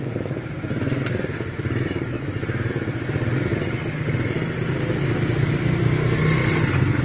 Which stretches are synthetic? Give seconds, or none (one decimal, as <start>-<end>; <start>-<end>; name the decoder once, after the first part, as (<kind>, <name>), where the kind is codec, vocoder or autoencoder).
none